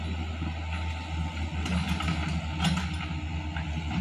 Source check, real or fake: real